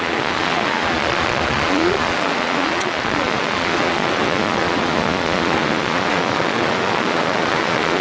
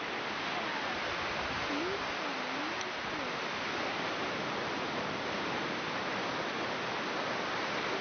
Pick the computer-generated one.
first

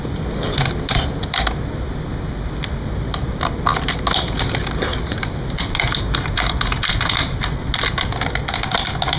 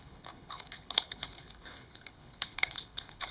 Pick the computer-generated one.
second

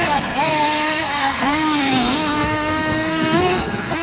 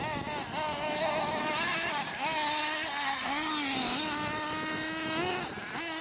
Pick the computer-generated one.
first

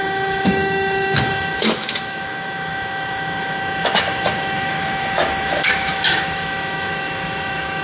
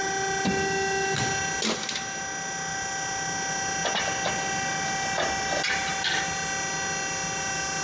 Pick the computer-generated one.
first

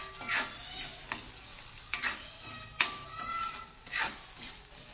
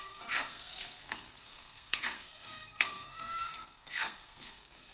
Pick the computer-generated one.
second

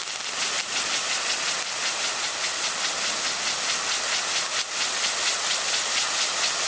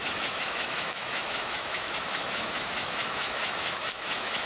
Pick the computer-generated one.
second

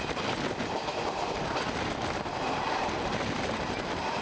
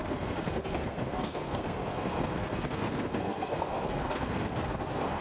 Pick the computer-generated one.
second